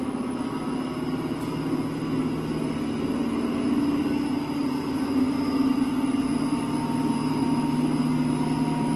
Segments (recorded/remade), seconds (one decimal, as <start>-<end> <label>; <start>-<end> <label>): 0.0-4.6 recorded; 4.6-5.7 remade; 5.7-9.0 recorded